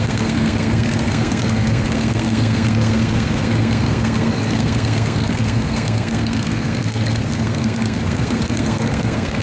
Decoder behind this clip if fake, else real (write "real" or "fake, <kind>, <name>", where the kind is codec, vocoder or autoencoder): fake, codec, SNAC